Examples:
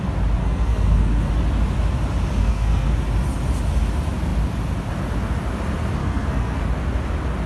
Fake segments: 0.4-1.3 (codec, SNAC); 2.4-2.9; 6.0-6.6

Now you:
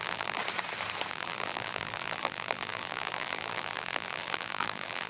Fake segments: 0.0-0.4 (vocoder, BigVGAN v2); 1.1-5.1

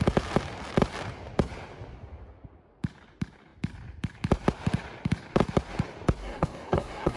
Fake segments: 6.2-7.2 (codec, SNAC)

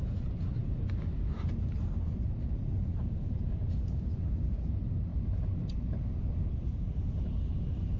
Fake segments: 0.0-8.0 (vocoder, BigVGAN v2)

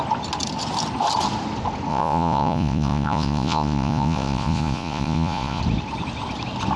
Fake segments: 1.9-5.6 (vocoder, Vocos)

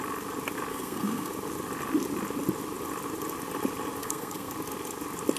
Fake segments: 0.7-1.3 (codec, SNAC); 4.0-4.5

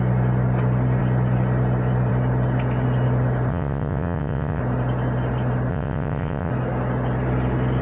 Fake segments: 3.5-4.6 (vocoder, WaveNeXt); 5.7-6.5